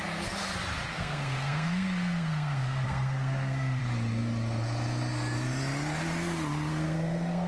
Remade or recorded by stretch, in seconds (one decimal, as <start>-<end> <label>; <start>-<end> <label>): 0.0-0.9 recorded; 0.9-3.8 remade; 3.8-6.7 recorded; 6.7-7.5 remade